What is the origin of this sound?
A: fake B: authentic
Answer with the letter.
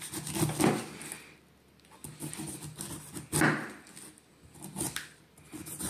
B